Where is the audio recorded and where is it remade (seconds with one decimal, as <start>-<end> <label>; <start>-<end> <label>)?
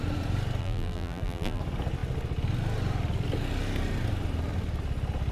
0.0-0.6 recorded; 0.6-1.6 remade; 1.6-5.3 recorded